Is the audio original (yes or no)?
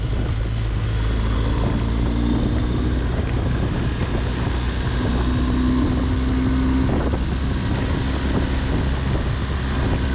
yes